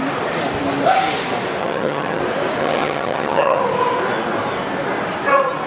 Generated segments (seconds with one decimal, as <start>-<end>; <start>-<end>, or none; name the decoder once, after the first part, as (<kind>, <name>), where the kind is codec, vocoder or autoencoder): 1.6-2.2 (vocoder, HiFi-GAN); 2.6-3.6